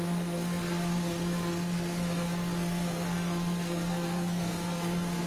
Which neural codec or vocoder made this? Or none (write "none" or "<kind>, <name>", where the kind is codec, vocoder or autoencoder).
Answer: codec, SNAC